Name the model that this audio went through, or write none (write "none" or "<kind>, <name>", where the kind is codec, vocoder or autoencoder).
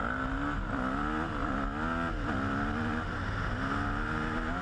none